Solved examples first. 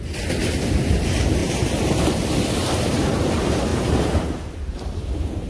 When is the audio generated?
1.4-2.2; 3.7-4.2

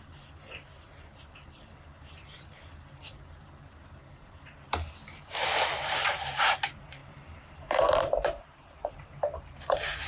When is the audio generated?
0.0-5.5; 6.1-10.1

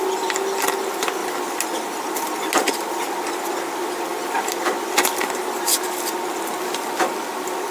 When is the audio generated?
none

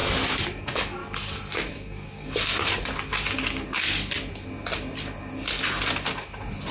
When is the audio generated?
0.6-1.0; 1.7-2.5

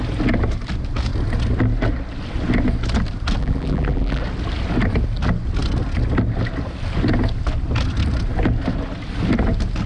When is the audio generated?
3.4-4.2